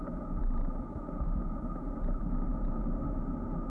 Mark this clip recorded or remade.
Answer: recorded